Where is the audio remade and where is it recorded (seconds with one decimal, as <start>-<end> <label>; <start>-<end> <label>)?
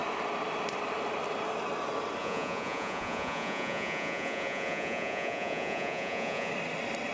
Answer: 0.0-2.2 recorded; 2.2-6.5 remade; 6.5-7.1 recorded